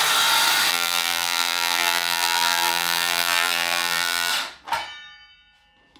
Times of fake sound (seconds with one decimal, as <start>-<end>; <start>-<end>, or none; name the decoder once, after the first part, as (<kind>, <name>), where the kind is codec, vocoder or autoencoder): 0.7-4.3 (vocoder, BigVGAN v2)